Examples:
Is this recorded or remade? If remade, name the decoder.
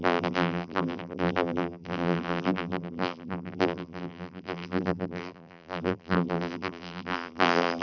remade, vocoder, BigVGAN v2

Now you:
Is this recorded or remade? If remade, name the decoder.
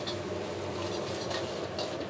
recorded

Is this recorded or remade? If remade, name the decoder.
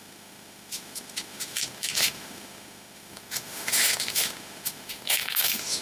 remade, autoencoder, DAC-VAE